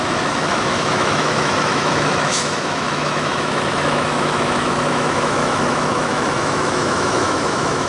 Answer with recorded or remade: remade